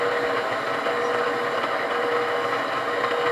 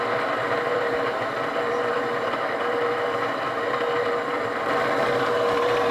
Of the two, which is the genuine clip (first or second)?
first